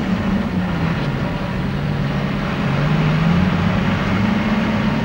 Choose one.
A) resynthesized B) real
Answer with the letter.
B